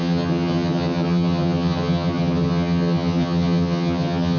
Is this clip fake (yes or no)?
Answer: yes